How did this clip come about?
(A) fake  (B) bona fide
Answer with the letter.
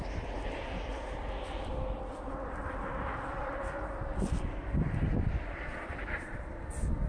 A